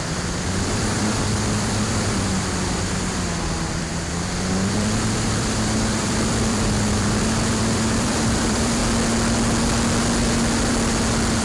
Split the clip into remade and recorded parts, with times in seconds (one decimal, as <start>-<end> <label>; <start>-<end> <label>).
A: 0.0-8.8 remade; 8.8-11.4 recorded